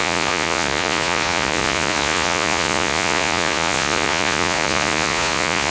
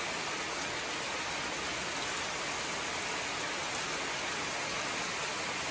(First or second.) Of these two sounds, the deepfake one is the first